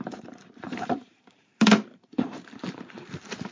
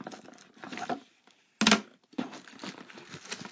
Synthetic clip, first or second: first